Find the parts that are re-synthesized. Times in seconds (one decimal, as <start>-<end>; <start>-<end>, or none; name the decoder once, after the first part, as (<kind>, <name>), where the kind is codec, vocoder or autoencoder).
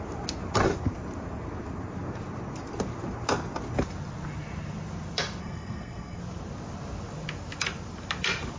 5.4-6.2 (codec, SNAC)